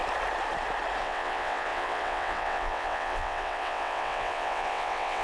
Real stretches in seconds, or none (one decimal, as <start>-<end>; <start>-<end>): 0.0-1.0